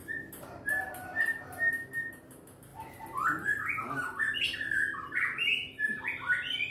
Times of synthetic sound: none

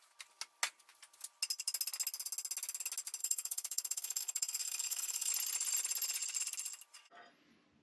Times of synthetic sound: 3.2-5.3

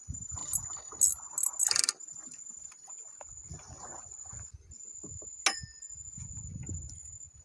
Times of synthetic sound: none